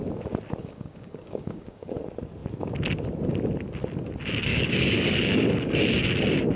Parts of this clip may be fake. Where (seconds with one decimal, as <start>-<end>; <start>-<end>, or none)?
0.6-1.9; 4.5-5.9